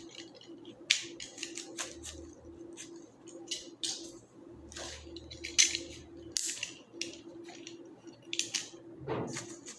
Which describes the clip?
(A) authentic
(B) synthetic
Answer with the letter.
A